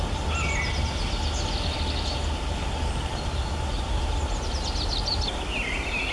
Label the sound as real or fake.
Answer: real